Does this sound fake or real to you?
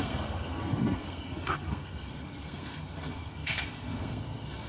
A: fake